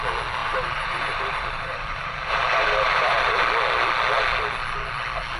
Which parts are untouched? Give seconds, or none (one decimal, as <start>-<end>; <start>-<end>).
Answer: 0.0-0.4; 3.4-5.4